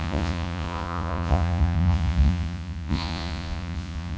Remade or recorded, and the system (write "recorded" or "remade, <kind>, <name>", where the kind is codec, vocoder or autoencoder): remade, vocoder, Vocos